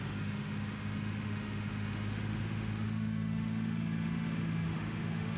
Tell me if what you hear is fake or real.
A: fake